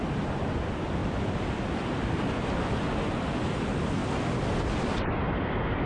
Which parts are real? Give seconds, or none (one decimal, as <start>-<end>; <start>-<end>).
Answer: 0.0-5.9